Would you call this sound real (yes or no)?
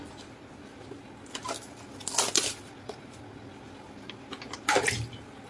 yes